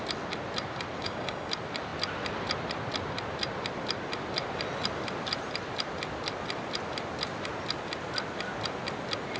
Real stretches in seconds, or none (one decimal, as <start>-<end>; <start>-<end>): 0.0-1.0; 1.5-9.4